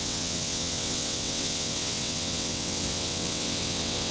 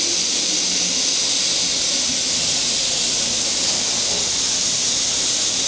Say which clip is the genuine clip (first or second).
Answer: second